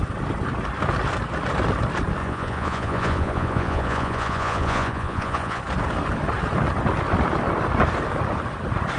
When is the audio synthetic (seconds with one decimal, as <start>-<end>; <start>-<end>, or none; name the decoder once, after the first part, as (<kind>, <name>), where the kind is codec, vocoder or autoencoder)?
2.2-5.6 (vocoder, Vocos)